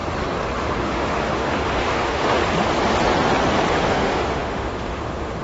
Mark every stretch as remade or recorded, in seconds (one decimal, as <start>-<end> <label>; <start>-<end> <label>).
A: 0.0-0.7 recorded; 0.7-2.4 remade; 2.4-3.9 recorded; 3.9-5.4 remade